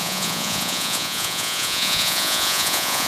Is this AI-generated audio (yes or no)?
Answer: yes